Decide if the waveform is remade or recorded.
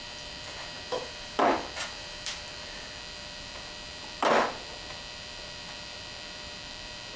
remade